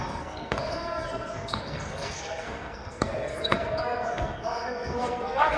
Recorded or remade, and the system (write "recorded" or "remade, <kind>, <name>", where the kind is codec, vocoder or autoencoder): remade, codec, SNAC